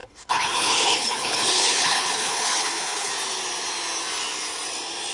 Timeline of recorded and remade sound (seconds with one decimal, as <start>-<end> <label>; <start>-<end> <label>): 0.0-3.1 remade; 3.1-5.1 recorded